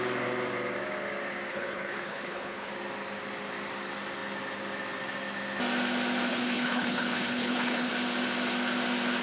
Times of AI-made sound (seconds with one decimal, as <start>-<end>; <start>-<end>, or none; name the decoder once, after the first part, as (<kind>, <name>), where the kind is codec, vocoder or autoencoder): 1.5-2.7 (codec, HILCodec); 6.3-7.9